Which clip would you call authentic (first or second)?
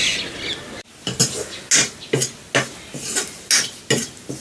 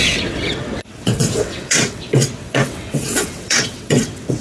first